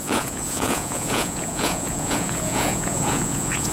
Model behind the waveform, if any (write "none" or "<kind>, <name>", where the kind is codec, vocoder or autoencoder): vocoder, Vocos